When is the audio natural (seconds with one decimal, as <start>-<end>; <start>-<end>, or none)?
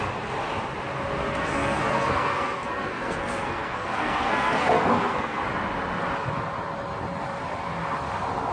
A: 0.0-1.2; 5.4-8.5